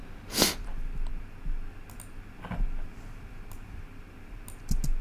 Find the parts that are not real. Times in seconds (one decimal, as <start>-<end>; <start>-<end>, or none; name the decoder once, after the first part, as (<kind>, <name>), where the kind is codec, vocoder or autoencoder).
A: 0.0-0.6 (vocoder, BigVGAN v2)